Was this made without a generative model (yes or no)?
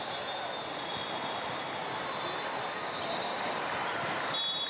yes